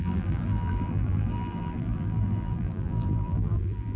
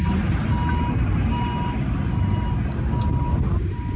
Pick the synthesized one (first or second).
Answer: first